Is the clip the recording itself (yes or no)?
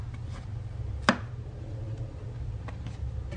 yes